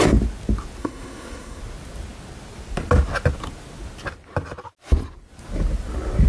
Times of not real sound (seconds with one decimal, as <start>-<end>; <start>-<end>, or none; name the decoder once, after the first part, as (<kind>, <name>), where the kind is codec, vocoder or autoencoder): 0.8-1.6 (codec, SNAC)